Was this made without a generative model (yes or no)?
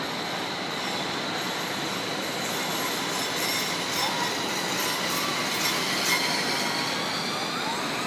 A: yes